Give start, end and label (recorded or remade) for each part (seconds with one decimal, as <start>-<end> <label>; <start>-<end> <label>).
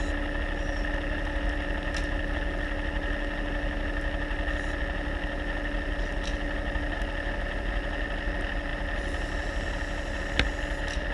0.0-11.1 recorded